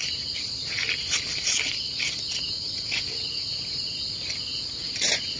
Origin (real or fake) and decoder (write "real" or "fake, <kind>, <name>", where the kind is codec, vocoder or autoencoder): real